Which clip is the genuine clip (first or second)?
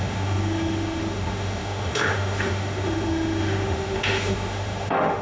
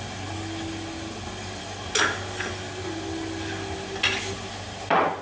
second